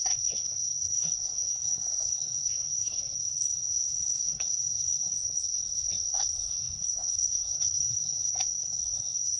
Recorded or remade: remade